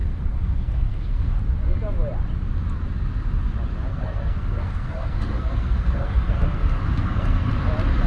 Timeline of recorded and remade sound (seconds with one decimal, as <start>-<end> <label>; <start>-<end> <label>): 0.0-1.4 remade; 1.4-3.9 recorded; 3.9-7.5 remade; 7.5-8.1 recorded